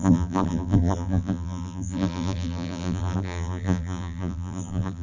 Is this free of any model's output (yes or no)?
no